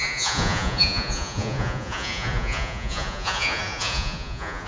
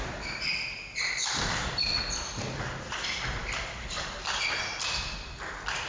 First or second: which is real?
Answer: second